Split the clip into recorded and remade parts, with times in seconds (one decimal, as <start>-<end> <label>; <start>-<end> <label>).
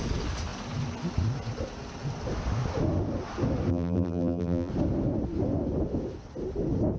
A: 0.0-3.7 recorded; 3.7-4.7 remade; 4.7-7.0 recorded